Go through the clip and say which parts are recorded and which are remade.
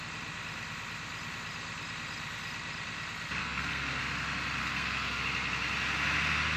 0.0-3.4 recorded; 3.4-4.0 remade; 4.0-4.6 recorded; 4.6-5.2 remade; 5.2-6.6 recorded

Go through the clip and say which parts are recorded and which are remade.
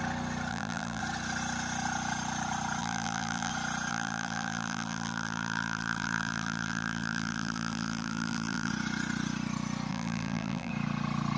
0.0-0.5 recorded; 0.5-1.0 remade; 1.0-2.8 recorded; 2.8-3.5 remade; 3.5-3.9 recorded; 3.9-8.7 remade; 8.7-9.9 recorded; 9.9-10.7 remade; 10.7-11.4 recorded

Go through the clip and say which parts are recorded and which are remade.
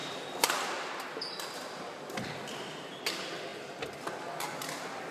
0.0-5.1 recorded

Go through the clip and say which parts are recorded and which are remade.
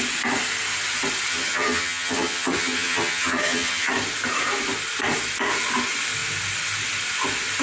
0.0-1.3 recorded; 1.3-3.9 remade; 3.9-7.6 recorded